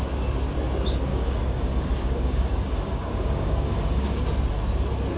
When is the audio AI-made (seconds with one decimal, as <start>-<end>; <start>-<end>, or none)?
1.1-4.2